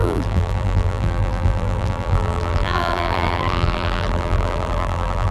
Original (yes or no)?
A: no